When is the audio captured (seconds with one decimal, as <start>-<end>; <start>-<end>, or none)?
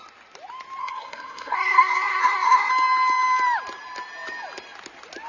0.0-0.8; 2.7-5.3